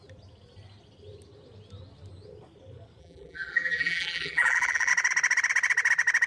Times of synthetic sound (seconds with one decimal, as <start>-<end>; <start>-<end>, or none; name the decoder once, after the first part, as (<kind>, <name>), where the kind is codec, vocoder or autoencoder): 3.0-4.9 (vocoder, BigVGAN v2)